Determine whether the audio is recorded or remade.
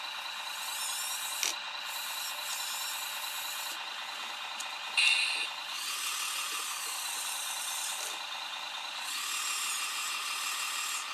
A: recorded